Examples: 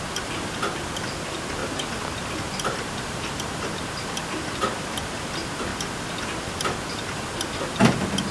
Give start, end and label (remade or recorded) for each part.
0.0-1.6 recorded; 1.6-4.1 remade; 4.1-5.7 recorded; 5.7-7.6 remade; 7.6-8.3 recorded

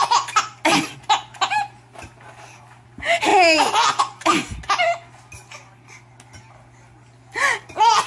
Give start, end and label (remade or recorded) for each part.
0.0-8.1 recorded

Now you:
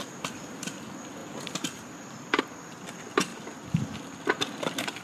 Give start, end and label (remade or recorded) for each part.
0.0-5.0 remade

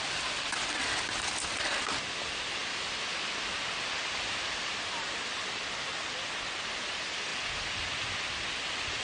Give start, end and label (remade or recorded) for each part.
0.0-9.0 recorded

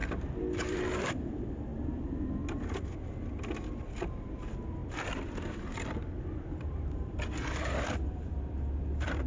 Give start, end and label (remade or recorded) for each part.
0.0-1.7 remade; 1.7-3.7 recorded; 3.7-9.3 remade

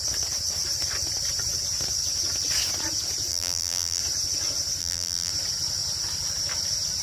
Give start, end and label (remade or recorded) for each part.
0.0-3.3 recorded; 3.3-4.0 remade; 4.0-4.8 recorded; 4.8-5.3 remade; 5.3-7.0 recorded

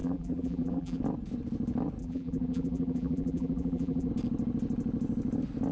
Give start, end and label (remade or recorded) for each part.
0.0-1.0 remade; 1.0-2.0 recorded; 2.0-4.1 remade; 4.1-5.7 recorded